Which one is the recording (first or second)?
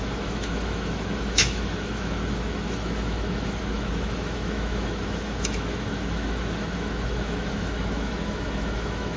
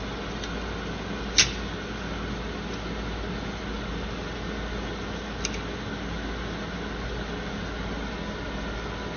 second